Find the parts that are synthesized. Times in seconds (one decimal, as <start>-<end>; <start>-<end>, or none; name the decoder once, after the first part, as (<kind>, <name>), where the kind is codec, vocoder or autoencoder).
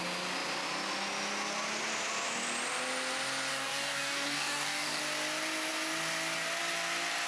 3.5-5.0 (codec, DAC)